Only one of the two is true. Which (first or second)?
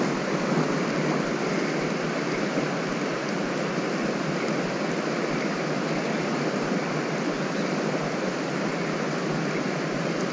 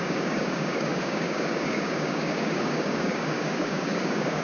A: first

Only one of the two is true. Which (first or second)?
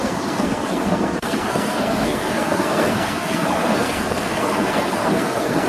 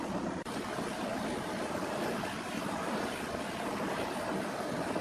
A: second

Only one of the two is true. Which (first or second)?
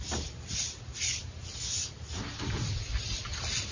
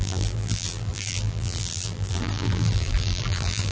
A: first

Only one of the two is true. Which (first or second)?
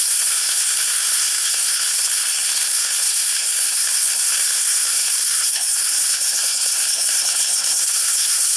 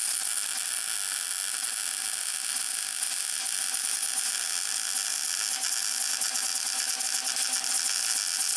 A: second